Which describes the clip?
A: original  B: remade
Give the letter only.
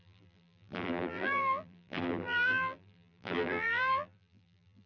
B